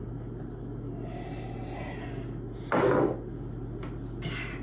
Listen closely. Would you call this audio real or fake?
real